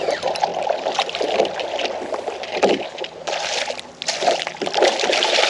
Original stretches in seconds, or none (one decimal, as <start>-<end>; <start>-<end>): 0.0-5.5